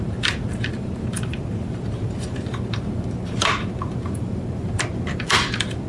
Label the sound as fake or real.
fake